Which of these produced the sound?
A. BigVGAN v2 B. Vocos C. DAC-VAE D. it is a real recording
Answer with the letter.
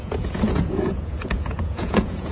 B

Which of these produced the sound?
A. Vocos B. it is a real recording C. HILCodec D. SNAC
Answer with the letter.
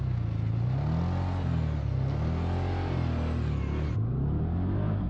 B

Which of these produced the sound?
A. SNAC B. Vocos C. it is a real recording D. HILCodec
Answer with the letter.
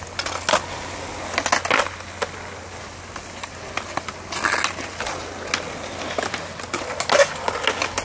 C